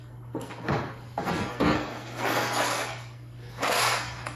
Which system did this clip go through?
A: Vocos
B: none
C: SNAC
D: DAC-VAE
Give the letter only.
C